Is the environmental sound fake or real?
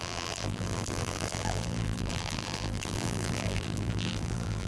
fake